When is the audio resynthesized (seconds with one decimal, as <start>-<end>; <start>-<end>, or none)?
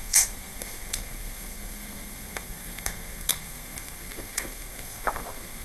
0.0-5.6